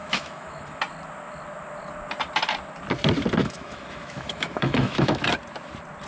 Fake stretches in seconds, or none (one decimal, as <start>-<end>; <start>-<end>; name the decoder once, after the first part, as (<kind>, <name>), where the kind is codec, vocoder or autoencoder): 0.0-0.8 (autoencoder, DAC-VAE); 3.4-5.2